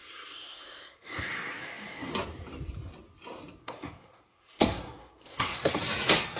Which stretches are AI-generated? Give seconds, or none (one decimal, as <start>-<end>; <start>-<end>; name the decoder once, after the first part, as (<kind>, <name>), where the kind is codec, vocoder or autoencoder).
0.0-2.1 (codec, SNAC); 3.6-5.7